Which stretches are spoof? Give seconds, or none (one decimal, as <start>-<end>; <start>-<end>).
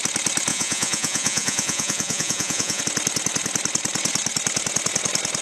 0.5-2.8